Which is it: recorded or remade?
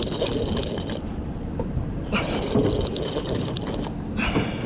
remade